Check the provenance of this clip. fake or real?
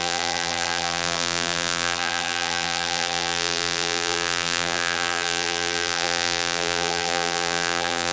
fake